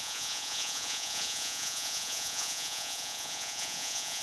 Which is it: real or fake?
fake